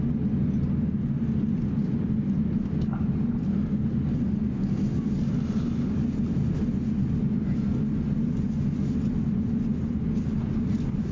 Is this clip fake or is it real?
real